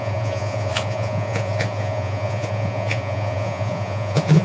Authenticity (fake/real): fake